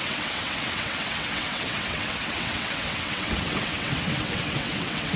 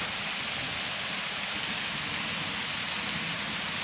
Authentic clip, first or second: second